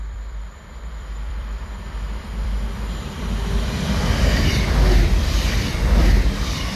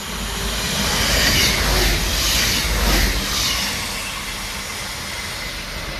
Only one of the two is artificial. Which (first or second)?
first